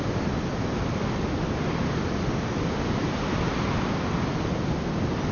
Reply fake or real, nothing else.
real